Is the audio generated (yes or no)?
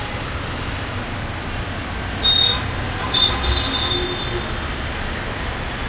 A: no